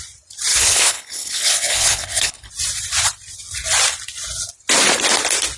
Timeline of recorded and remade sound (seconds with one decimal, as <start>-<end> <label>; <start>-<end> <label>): 0.0-0.5 recorded; 0.5-2.5 remade; 2.5-5.6 recorded